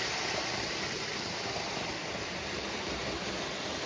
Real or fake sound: real